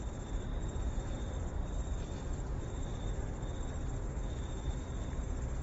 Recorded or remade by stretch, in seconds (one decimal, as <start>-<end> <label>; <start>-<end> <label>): 0.0-4.0 recorded; 4.0-4.8 remade; 4.8-5.6 recorded